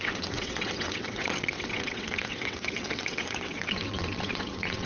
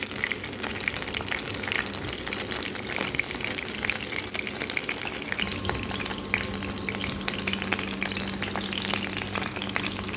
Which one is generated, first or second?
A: first